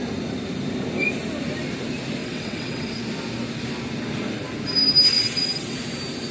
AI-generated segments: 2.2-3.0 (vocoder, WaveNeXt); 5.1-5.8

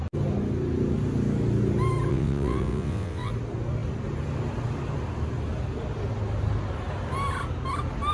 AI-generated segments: 2.1-3.3 (vocoder, WaveNeXt)

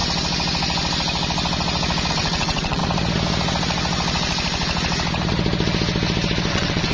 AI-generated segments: 2.1-2.8 (vocoder, WaveNeXt); 6.5-6.9

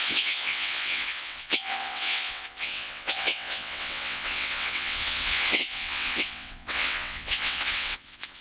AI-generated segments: 0.0-8.4 (vocoder, WaveNeXt)

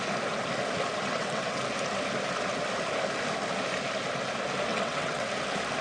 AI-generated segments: 1.1-1.6 (vocoder, WaveNeXt); 4.7-5.3

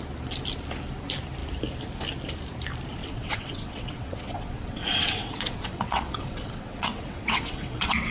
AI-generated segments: 3.0-8.1 (vocoder, WaveNeXt)

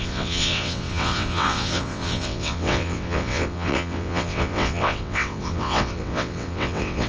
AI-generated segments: 0.0-7.1 (vocoder, WaveNeXt)

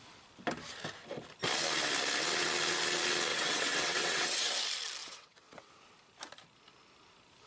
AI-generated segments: 3.3-4.5 (vocoder, WaveNeXt); 5.0-5.7